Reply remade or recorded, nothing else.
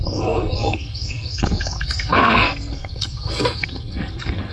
remade